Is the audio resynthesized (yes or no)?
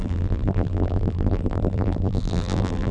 yes